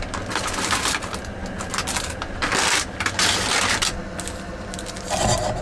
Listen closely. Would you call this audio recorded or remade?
recorded